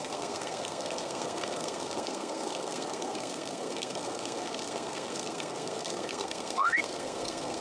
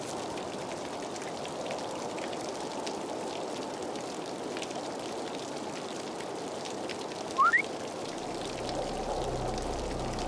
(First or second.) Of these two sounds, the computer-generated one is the first